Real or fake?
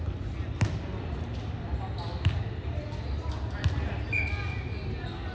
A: real